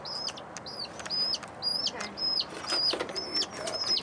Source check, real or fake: real